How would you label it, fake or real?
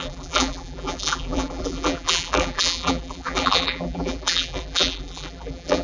fake